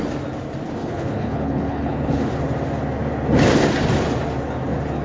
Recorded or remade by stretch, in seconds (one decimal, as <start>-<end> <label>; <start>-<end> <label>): 0.0-0.8 recorded; 0.8-2.3 remade; 2.3-5.0 recorded